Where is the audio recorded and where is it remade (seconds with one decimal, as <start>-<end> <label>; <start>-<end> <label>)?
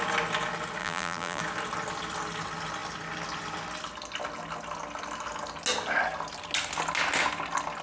0.0-0.8 recorded; 0.8-1.4 remade; 1.4-7.8 recorded